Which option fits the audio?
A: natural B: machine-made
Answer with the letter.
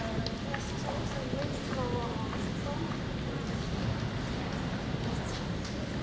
A